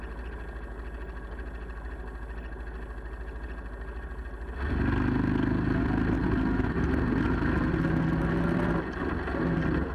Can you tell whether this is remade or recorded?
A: recorded